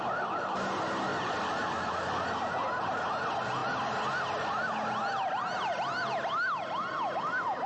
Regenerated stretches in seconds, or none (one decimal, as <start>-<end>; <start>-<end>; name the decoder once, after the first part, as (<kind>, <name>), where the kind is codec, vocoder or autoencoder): 1.1-1.9 (vocoder, BigVGAN v2); 5.7-7.7